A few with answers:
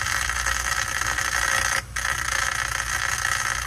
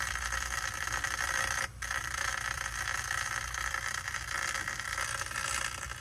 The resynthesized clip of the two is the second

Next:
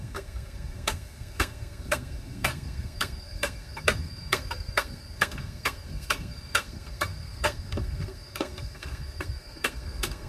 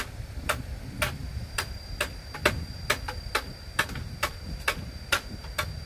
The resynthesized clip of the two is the first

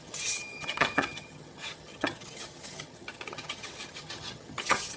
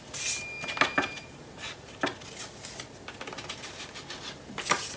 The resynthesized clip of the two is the first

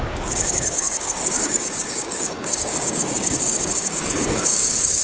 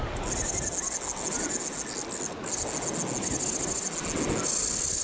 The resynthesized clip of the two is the first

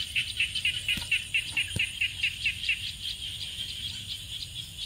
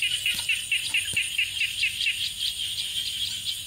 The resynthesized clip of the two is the first